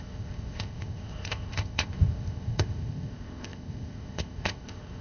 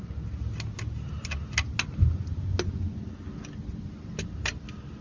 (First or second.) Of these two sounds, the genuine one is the second